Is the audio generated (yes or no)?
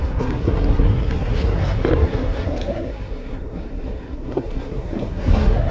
yes